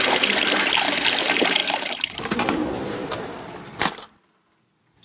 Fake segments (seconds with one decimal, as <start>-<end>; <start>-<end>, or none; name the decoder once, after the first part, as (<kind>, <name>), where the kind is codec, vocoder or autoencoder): none